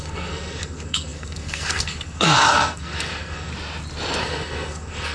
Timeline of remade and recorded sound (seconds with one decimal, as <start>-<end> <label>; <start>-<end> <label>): 0.0-3.5 remade; 3.5-4.2 recorded; 4.2-5.1 remade